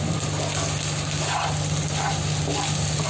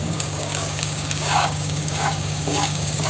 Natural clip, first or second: first